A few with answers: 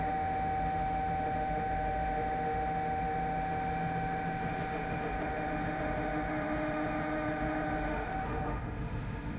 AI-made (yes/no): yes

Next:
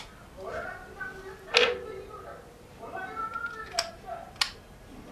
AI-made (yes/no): no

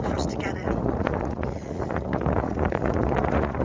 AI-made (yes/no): yes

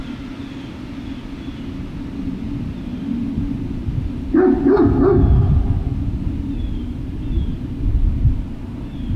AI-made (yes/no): no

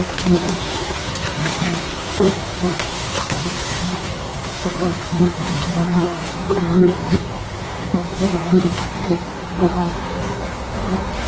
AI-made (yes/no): yes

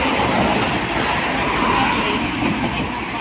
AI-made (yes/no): no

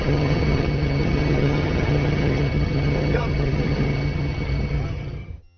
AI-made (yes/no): yes